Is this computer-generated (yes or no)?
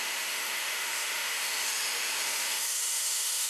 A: yes